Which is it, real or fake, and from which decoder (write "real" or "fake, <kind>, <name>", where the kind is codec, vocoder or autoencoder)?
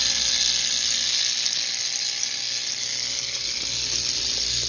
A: real